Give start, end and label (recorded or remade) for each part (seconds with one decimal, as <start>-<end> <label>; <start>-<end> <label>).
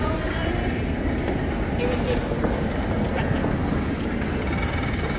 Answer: 0.0-5.2 recorded